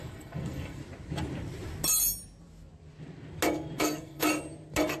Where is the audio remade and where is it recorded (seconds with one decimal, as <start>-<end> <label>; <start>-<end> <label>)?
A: 0.0-0.8 remade; 0.8-3.8 recorded; 3.8-4.3 remade; 4.3-5.0 recorded

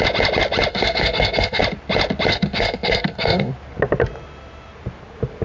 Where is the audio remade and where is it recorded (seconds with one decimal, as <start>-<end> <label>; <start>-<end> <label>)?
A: 0.0-0.7 recorded; 0.7-1.6 remade; 1.6-2.3 recorded; 2.3-3.5 remade; 3.5-5.4 recorded

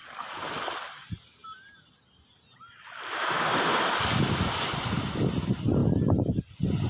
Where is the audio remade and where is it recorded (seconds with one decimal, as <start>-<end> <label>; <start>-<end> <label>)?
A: 0.0-6.9 recorded

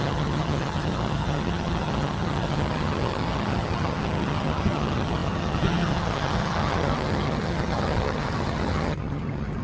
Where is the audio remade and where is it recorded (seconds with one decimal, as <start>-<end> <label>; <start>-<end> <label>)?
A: 0.0-9.6 remade

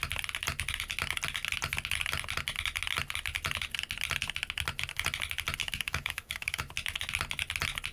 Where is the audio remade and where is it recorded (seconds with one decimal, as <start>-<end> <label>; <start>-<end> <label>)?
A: 0.0-5.6 recorded; 5.6-6.6 remade; 6.6-7.9 recorded

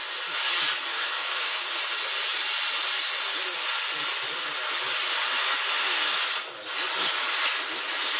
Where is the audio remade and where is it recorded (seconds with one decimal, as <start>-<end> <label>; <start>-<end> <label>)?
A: 0.0-0.9 recorded; 0.9-1.7 remade; 1.7-8.2 recorded

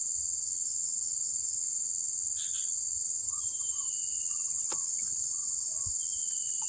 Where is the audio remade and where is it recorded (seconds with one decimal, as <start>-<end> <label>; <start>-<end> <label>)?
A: 0.0-3.2 recorded; 3.2-3.9 remade; 3.9-6.7 recorded